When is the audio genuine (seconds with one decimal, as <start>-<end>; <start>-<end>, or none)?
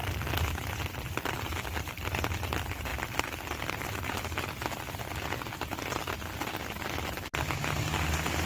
0.0-8.5